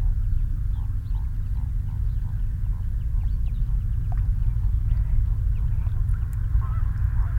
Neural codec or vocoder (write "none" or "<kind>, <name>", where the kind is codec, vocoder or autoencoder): none